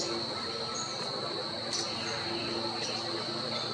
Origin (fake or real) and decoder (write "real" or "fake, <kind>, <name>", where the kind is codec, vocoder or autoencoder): real